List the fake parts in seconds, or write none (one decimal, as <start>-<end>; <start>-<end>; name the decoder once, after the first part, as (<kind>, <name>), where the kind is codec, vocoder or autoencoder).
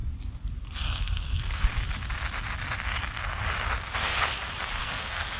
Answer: 1.0-1.7 (codec, SNAC); 4.8-5.4